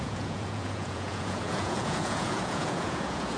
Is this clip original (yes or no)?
no